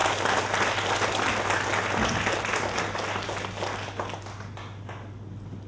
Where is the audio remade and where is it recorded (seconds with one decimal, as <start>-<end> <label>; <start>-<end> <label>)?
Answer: 0.0-5.7 recorded